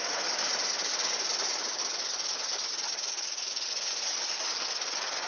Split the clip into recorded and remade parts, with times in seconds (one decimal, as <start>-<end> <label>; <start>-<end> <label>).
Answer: 0.0-1.8 remade; 1.8-3.5 recorded; 3.5-5.3 remade